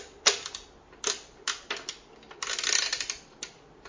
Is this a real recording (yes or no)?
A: yes